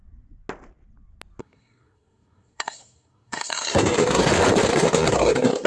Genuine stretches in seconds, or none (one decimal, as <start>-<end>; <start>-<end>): 0.0-1.4; 4.3-4.7